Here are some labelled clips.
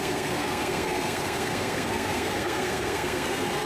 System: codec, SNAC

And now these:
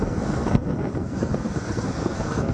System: codec, SNAC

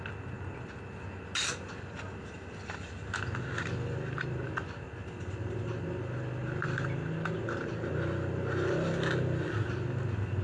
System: none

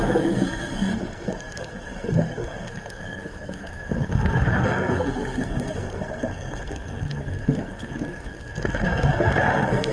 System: codec, SNAC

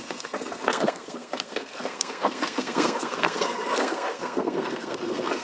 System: codec, SNAC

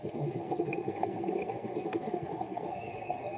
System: codec, SNAC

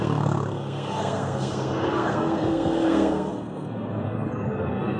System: codec, SNAC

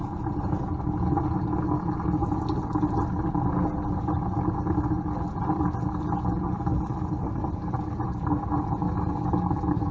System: none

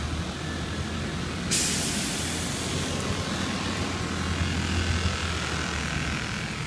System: none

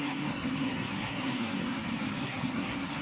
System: codec, SNAC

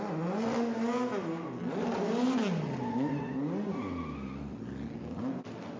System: none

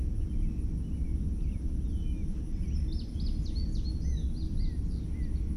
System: none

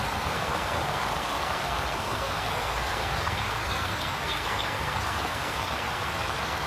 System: codec, SNAC